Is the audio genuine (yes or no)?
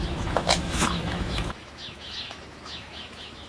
no